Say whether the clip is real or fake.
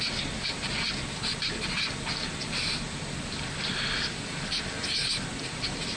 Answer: real